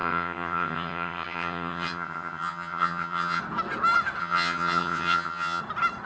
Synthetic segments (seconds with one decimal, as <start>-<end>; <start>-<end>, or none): 0.0-3.4; 4.2-5.6